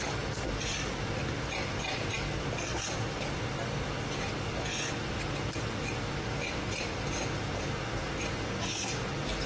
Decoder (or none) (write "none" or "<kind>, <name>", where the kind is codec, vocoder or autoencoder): none